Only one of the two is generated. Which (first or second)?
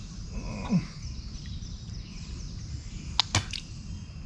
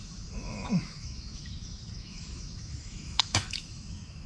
second